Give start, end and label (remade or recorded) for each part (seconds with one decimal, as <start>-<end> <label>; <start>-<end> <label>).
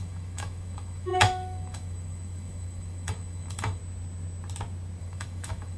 0.0-3.8 remade; 3.8-5.0 recorded; 5.0-5.8 remade